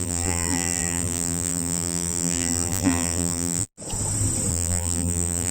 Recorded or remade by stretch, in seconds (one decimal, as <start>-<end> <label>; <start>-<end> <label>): 0.0-3.7 remade; 3.7-4.5 recorded; 4.5-5.5 remade